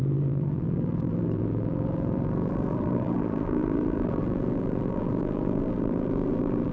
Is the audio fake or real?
fake